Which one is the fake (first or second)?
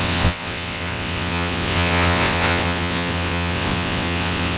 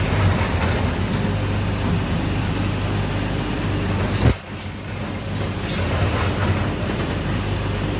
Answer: first